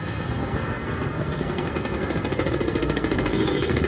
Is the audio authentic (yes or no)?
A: no